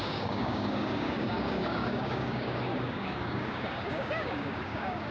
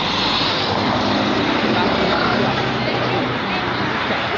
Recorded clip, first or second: second